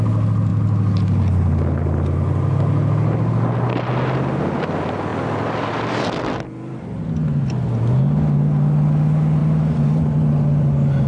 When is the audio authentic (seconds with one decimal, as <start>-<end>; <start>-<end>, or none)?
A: 0.0-5.1; 7.0-11.1